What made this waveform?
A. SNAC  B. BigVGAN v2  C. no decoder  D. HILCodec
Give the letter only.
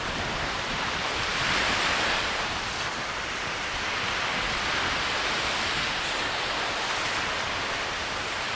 B